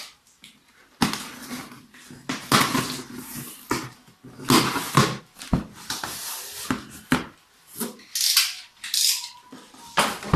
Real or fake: real